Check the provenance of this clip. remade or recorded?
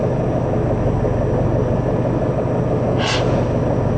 recorded